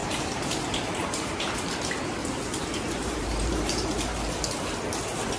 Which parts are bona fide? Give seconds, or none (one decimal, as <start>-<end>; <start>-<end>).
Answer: 1.8-3.0; 3.8-5.4